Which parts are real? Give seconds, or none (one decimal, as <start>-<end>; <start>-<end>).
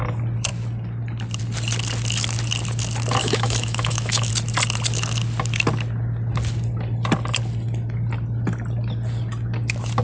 0.0-3.2; 4.3-10.0